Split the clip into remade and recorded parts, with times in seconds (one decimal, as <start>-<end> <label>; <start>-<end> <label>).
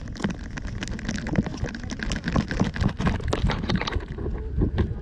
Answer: 0.0-5.0 recorded